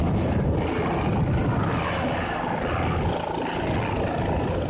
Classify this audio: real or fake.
real